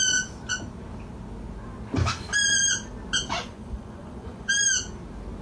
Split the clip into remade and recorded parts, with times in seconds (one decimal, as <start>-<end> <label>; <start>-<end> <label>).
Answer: 0.0-3.4 recorded; 3.4-4.5 remade; 4.5-5.4 recorded